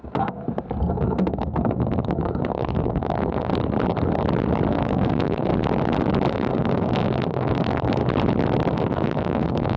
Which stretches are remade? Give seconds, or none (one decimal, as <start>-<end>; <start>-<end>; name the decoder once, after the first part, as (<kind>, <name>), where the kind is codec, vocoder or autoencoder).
0.0-0.4 (codec, SNAC); 0.9-3.5; 4.7-5.5; 6.3-8.0; 8.7-9.8